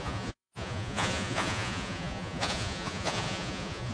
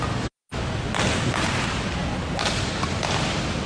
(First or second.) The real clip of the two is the second